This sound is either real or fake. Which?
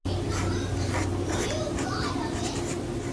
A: real